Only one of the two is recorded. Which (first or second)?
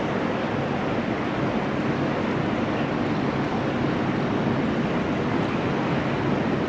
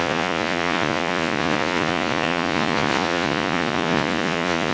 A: first